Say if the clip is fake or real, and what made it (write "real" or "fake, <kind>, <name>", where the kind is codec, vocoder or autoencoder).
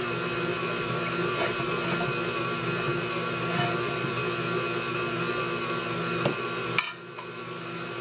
real